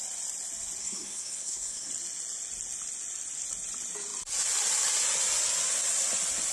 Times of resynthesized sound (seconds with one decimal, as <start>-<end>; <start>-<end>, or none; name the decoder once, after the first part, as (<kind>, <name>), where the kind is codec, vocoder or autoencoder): 0.8-1.9 (codec, SNAC)